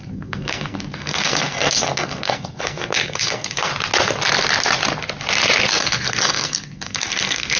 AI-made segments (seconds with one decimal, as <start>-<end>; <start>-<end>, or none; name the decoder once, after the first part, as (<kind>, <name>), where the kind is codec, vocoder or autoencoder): 0.0-3.7 (codec, SNAC); 5.7-7.6